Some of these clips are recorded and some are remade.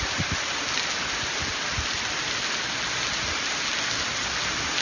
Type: recorded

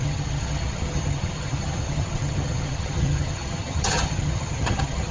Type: remade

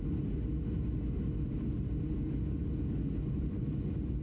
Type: recorded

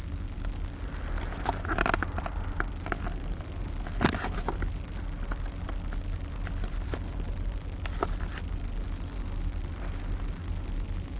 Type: recorded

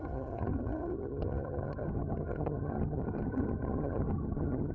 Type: remade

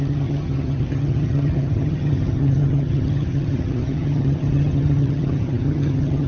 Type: remade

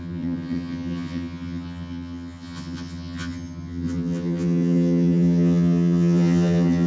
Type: remade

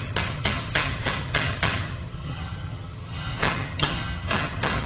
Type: remade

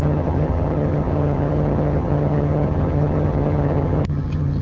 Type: remade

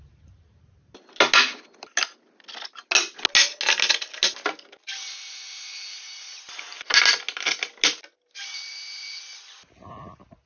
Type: recorded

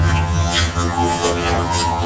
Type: remade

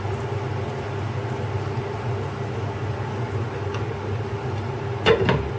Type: recorded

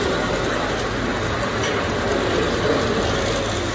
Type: recorded